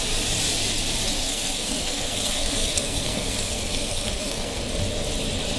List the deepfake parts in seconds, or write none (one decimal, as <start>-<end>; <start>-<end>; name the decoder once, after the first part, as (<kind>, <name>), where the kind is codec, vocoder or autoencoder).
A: 1.2-4.6 (codec, SNAC)